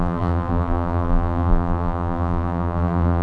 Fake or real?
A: fake